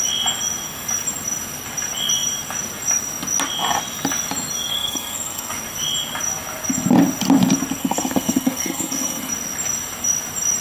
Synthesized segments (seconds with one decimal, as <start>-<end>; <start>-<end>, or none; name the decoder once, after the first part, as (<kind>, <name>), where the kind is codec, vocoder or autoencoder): 4.7-5.5 (codec, SNAC); 7.8-9.3